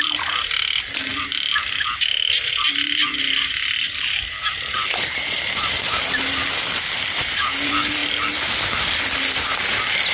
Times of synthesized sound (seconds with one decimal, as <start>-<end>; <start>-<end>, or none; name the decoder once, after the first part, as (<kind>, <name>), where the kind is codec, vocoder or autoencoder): 0.0-10.1 (vocoder, BigVGAN v2)